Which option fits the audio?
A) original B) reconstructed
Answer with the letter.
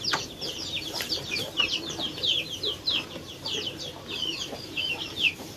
B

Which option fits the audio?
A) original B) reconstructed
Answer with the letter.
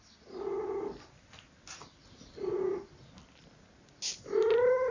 A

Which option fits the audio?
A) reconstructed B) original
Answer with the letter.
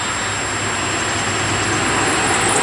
B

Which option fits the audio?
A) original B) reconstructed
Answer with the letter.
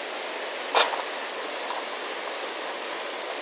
A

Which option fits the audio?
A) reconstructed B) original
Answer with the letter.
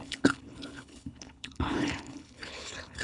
A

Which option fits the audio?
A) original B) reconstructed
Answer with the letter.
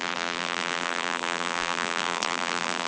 B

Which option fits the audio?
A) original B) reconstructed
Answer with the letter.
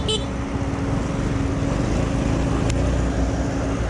A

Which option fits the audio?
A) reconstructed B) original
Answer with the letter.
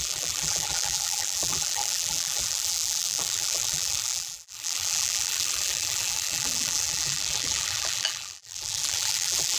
A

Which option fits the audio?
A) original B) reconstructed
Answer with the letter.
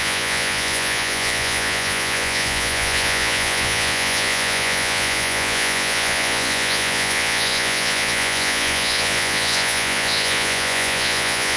B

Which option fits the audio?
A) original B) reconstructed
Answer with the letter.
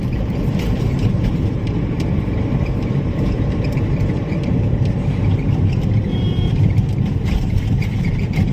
B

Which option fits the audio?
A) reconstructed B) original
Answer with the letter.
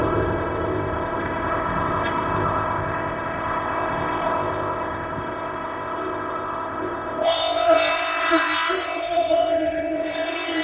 A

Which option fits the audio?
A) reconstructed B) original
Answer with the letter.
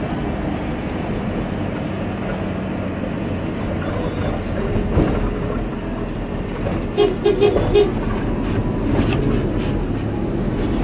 B